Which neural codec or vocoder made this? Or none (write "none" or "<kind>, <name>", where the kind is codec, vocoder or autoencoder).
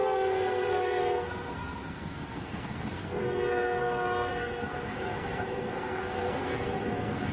codec, SNAC